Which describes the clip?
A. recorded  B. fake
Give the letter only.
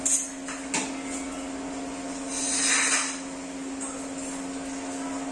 A